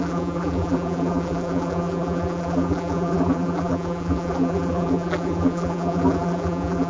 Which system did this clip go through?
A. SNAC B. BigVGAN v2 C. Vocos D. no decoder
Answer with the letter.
B